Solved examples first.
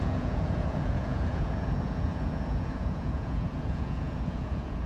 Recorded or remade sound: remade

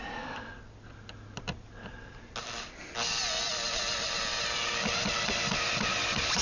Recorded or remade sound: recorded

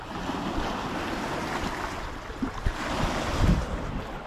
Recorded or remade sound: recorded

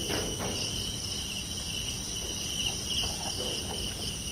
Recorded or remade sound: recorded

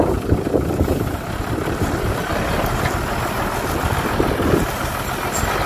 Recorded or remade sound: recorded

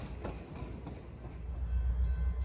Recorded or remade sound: recorded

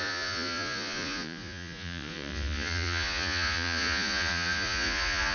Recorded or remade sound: remade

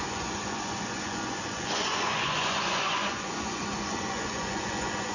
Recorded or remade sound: remade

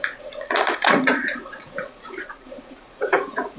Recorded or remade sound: remade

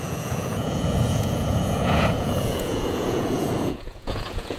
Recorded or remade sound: remade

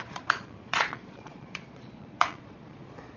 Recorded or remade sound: remade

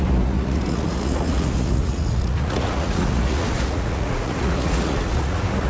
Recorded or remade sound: remade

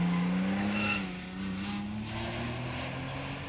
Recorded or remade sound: recorded